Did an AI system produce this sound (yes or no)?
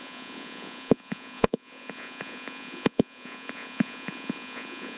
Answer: yes